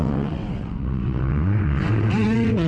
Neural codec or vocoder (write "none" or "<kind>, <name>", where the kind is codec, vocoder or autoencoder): vocoder, WaveNeXt